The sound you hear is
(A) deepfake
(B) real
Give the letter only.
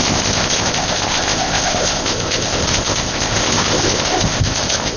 A